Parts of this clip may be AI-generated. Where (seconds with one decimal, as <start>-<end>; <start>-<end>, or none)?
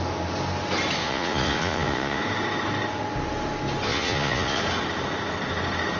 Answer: 1.0-2.2; 3.9-4.6